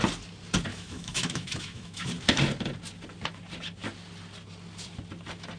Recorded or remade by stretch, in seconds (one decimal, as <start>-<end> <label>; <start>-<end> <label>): 0.0-0.7 recorded; 0.7-2.1 remade; 2.1-5.6 recorded